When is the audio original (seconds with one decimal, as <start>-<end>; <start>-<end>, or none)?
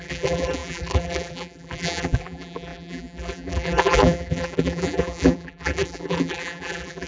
none